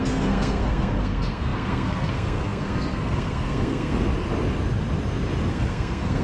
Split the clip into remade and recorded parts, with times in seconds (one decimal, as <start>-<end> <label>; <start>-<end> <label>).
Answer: 0.0-4.1 remade; 4.1-5.5 recorded; 5.5-6.2 remade